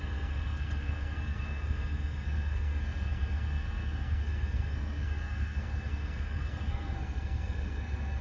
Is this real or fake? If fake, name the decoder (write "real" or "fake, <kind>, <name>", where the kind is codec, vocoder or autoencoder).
fake, codec, SNAC